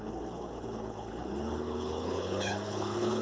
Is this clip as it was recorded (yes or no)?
no